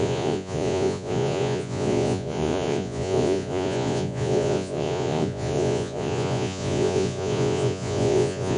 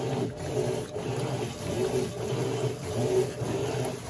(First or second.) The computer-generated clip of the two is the first